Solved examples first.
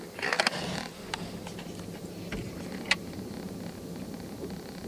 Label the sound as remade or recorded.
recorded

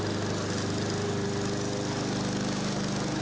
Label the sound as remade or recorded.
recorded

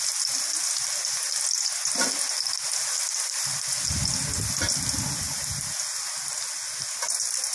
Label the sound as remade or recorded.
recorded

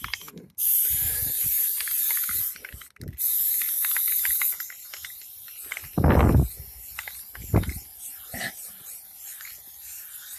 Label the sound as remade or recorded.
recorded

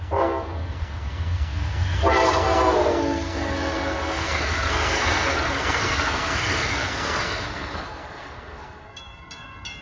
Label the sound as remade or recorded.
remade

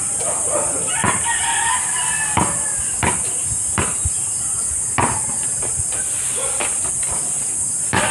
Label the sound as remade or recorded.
recorded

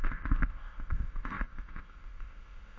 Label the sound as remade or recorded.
remade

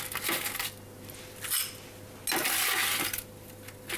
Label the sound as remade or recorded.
recorded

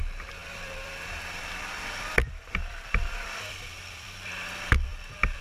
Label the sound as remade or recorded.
remade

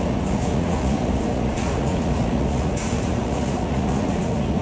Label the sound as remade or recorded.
remade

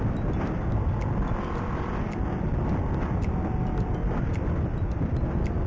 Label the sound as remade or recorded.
recorded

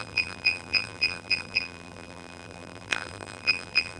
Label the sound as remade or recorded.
remade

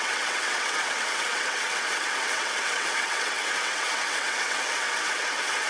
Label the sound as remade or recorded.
remade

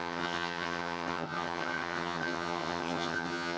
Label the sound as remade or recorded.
remade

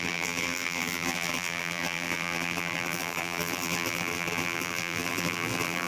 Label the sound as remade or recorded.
remade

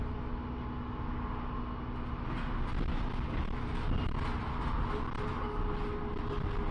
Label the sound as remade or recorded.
recorded